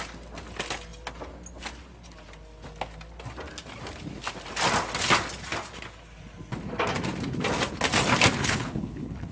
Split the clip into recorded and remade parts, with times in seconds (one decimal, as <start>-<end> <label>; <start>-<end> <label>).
0.0-8.4 recorded; 8.4-9.3 remade